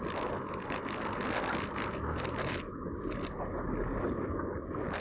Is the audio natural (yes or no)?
no